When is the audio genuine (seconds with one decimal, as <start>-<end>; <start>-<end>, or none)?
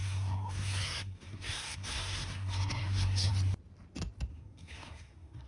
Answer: 3.3-4.3